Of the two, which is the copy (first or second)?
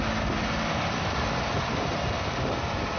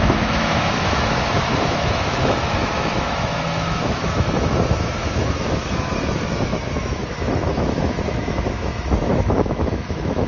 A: second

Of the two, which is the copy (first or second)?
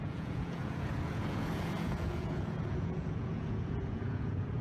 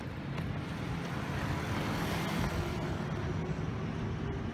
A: first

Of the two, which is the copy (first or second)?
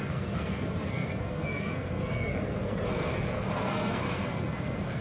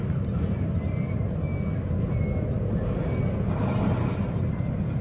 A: first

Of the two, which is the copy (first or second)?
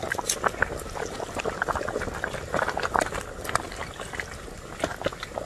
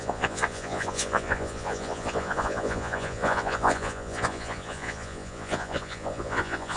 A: second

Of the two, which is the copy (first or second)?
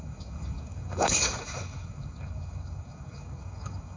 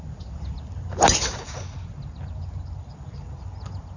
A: first